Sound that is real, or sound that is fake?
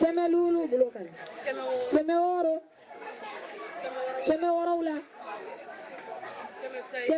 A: fake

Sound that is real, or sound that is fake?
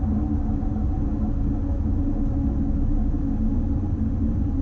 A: real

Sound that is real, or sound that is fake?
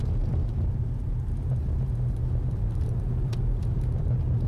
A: fake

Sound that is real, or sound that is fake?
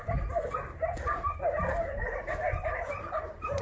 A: fake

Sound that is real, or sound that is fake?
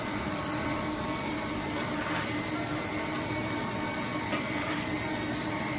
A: fake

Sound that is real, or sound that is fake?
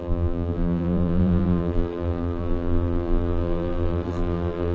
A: fake